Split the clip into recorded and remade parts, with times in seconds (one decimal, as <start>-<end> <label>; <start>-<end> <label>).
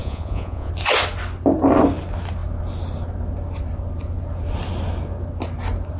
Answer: 0.0-0.7 remade; 0.7-6.0 recorded